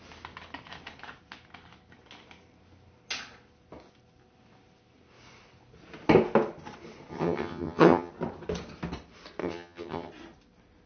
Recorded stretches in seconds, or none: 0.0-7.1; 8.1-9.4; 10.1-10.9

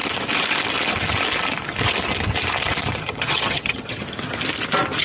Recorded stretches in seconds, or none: 0.0-3.0; 4.0-5.0

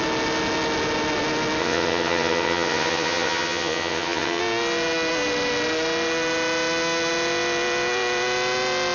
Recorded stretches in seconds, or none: 0.0-1.6; 4.4-8.9

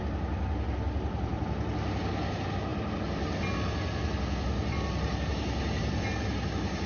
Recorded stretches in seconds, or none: 0.0-6.9